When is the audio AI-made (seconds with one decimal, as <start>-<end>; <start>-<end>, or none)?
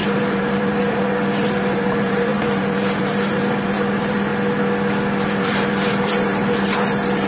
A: 0.0-4.3; 5.4-7.3